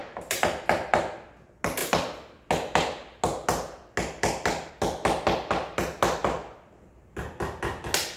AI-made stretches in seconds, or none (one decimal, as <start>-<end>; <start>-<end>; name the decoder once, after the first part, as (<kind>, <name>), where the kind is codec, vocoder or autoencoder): 0.0-0.9 (vocoder, BigVGAN v2)